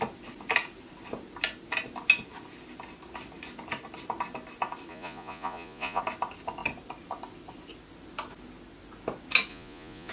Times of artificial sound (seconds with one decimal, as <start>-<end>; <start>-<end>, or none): 4.9-6.0; 9.5-10.1